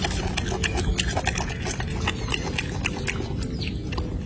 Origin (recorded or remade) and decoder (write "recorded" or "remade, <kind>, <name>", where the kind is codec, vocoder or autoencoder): recorded